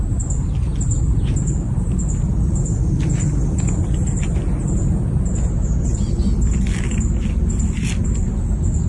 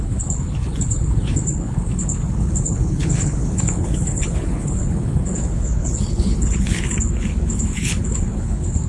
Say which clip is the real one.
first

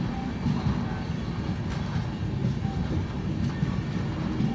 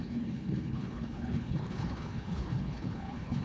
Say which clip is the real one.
first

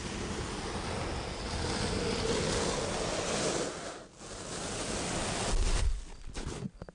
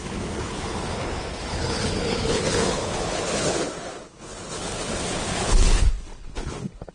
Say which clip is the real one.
first